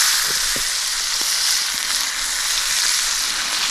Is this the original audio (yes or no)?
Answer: yes